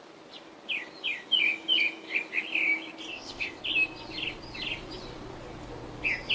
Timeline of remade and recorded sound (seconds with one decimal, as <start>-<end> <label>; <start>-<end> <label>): 0.0-3.1 recorded; 3.1-3.6 remade; 3.6-6.3 recorded